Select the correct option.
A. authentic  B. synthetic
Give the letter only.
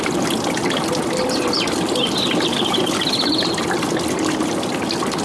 A